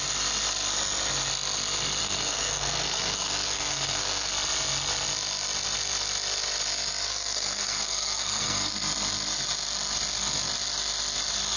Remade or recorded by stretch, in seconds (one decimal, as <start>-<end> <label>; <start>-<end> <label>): 0.0-2.0 recorded; 2.0-4.3 remade; 4.3-7.1 recorded; 7.1-8.7 remade; 8.7-11.6 recorded